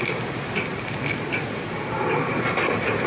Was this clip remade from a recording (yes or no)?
no